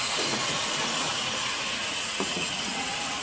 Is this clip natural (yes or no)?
no